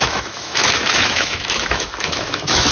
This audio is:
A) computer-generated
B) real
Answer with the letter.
A